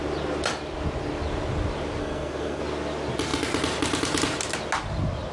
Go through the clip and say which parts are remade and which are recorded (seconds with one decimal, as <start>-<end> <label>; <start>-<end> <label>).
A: 0.0-2.0 recorded; 2.0-2.6 remade; 2.6-5.3 recorded